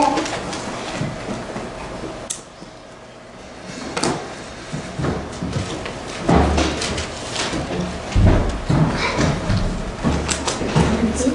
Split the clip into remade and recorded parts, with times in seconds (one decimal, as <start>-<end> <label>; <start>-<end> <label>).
0.0-11.3 recorded